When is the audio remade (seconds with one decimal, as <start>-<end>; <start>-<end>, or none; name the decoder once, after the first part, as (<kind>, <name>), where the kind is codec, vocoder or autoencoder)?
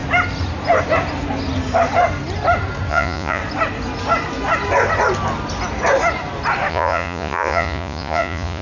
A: 2.9-3.4 (vocoder, Vocos); 6.7-8.6